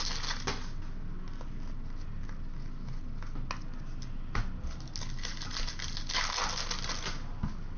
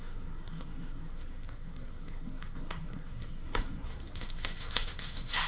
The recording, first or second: first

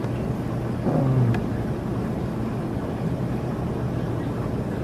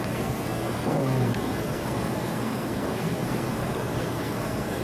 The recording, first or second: first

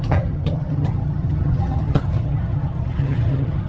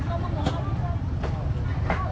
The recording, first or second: second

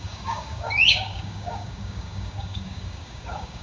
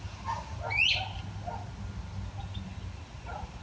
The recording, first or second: second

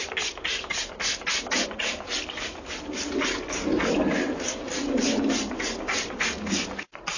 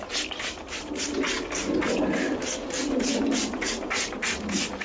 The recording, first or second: first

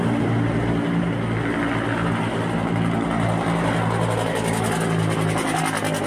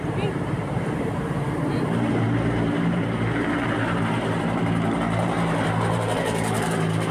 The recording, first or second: first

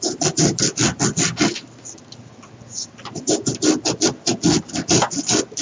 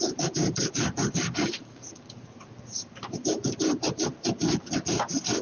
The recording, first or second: first